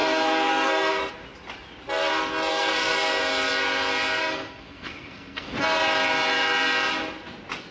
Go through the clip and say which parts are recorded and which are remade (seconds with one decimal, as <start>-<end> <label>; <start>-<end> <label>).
0.0-1.1 remade; 1.1-2.5 recorded; 2.5-3.2 remade; 3.2-4.2 recorded; 4.2-5.5 remade; 5.5-7.7 recorded